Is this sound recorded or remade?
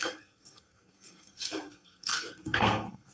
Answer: remade